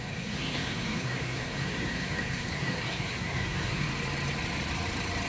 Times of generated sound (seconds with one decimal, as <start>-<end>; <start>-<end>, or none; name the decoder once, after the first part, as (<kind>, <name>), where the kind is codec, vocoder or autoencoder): 0.0-3.9 (codec, SNAC)